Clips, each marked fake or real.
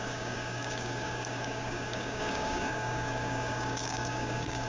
fake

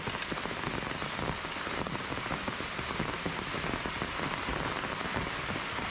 real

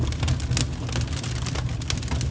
real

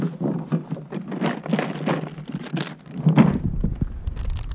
real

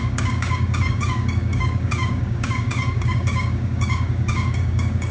fake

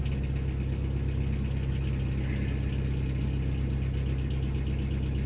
real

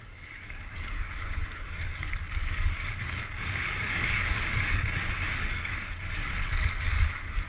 fake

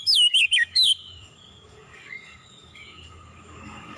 fake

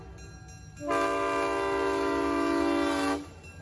real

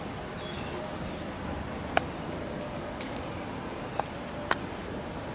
real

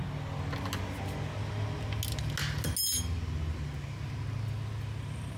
real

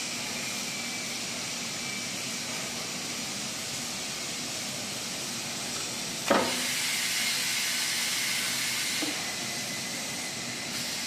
real